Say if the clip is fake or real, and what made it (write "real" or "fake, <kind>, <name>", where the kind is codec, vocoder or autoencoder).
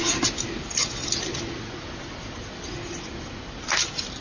real